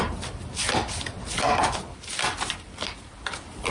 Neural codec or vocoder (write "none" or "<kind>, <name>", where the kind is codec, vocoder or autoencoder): none